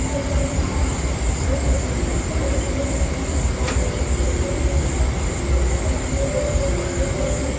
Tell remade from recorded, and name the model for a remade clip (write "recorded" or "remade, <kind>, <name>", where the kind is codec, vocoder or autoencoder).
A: recorded